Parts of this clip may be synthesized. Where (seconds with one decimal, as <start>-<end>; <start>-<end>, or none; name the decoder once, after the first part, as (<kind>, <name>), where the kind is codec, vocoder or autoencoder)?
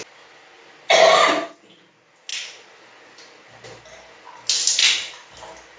none